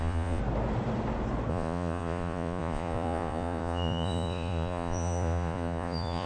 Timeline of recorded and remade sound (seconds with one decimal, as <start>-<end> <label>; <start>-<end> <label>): 0.0-0.4 remade; 0.4-1.5 recorded; 1.5-6.3 remade